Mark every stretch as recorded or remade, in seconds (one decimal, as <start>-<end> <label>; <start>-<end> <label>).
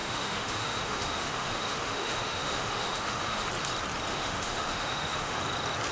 0.0-3.5 remade; 3.5-4.1 recorded; 4.1-5.4 remade; 5.4-5.9 recorded